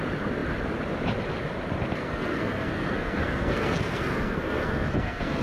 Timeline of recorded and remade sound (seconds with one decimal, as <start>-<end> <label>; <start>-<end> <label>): 0.0-2.0 recorded; 2.0-5.4 remade